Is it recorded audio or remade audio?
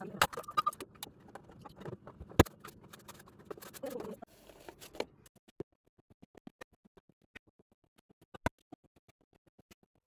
recorded